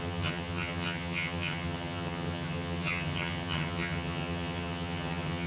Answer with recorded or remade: remade